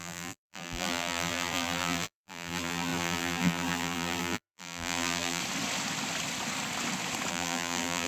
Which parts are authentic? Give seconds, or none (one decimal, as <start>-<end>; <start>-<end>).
5.4-7.3

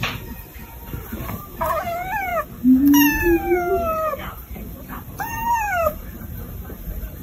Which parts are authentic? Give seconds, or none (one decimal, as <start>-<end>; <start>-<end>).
2.3-3.2

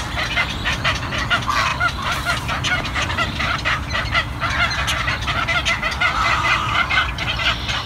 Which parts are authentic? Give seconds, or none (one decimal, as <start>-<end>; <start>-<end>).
0.0-1.7; 2.5-7.9

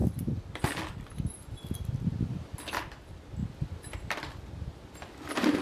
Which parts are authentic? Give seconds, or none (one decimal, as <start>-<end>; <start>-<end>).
0.8-3.4; 4.2-5.6

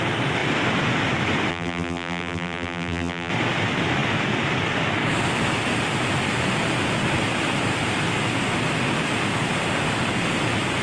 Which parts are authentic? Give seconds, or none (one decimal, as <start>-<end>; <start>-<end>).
0.0-1.5; 3.3-10.8

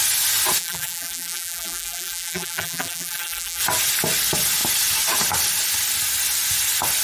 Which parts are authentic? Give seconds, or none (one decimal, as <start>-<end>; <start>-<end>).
0.0-0.6; 3.6-7.0

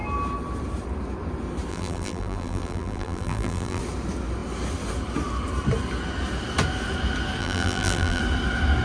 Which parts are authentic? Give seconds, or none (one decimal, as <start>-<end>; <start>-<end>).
0.0-1.7; 3.8-7.4; 8.2-8.8